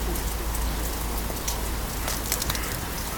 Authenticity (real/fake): real